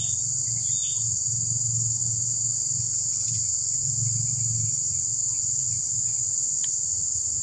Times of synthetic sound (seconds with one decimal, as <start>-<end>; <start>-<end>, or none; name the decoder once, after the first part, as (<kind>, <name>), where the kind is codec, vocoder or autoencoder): none